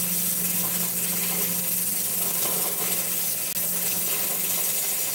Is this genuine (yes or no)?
yes